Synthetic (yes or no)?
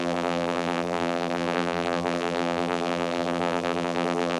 yes